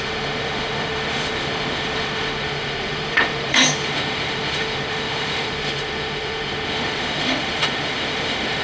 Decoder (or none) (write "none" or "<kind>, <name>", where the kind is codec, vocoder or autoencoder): autoencoder, DAC-VAE